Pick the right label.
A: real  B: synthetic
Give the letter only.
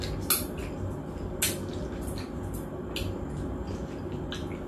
A